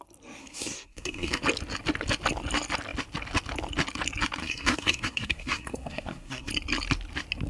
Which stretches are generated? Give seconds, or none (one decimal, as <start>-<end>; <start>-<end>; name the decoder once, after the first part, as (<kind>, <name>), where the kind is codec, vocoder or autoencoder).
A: 0.4-1.4 (codec, SNAC); 4.4-6.5